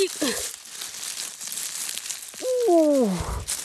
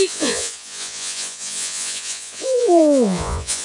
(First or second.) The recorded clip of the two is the first